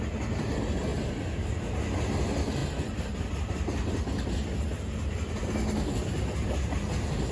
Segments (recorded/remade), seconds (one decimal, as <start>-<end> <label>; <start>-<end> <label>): 0.0-2.6 recorded; 2.6-3.3 remade; 3.3-7.3 recorded